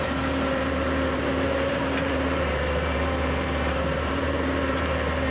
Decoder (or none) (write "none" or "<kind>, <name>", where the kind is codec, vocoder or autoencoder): vocoder, BigVGAN v2